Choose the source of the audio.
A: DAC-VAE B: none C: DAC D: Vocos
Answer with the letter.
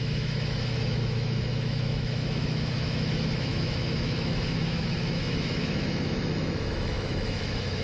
A